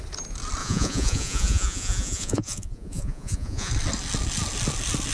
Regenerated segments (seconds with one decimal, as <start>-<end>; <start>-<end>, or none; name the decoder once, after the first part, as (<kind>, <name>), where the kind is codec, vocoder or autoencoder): 0.6-3.7 (vocoder, Vocos)